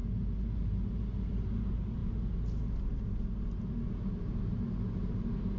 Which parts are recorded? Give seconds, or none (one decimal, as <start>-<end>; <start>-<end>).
0.0-5.6